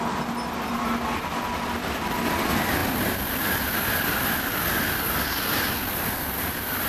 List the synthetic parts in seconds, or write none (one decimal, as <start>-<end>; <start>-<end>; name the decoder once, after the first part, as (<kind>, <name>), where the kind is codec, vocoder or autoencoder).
2.8-4.0 (vocoder, BigVGAN v2)